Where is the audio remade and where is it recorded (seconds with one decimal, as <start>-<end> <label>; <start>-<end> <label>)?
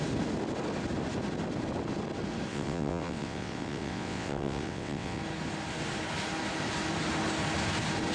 0.0-2.5 recorded; 2.5-5.2 remade; 5.2-8.1 recorded